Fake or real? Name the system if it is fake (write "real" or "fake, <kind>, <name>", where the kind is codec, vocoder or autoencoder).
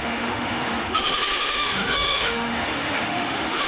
fake, autoencoder, DAC-VAE